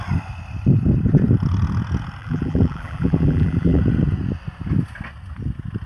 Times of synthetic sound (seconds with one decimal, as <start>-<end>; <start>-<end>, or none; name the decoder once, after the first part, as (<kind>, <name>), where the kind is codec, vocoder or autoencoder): 2.2-3.8 (vocoder, BigVGAN v2)